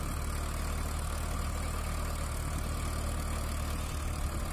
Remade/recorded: recorded